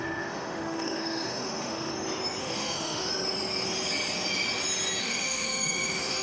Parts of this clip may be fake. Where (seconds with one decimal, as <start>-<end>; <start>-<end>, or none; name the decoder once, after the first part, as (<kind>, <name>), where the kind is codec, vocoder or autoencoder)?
0.0-1.9 (autoencoder, DAC-VAE); 2.4-3.1; 5.0-6.2